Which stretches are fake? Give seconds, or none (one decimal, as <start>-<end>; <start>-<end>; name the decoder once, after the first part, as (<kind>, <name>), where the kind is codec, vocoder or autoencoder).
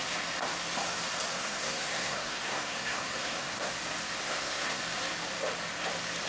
1.3-3.7 (codec, SNAC); 4.2-4.8